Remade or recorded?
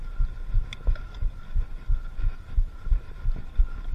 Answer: recorded